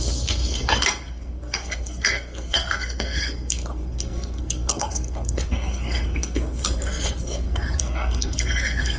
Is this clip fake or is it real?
fake